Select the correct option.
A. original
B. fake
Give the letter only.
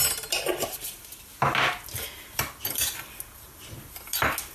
A